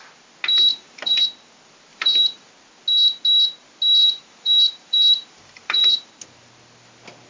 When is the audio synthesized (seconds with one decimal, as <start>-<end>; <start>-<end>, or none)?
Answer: 0.7-1.2; 1.9-2.5; 4.0-6.1